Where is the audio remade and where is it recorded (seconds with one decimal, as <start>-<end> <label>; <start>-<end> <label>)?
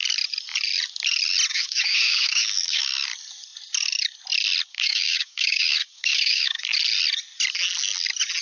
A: 0.0-1.5 recorded; 1.5-2.8 remade; 2.8-4.7 recorded; 4.7-6.6 remade; 6.6-8.4 recorded